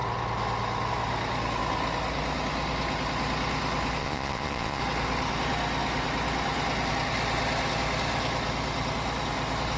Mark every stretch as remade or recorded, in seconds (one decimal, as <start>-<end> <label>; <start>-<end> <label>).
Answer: 0.0-4.0 recorded; 4.0-4.8 remade; 4.8-9.8 recorded

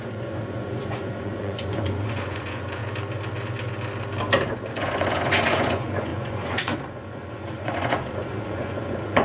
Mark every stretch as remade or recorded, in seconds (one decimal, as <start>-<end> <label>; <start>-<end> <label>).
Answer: 0.0-2.8 remade; 2.8-4.7 recorded; 4.7-9.2 remade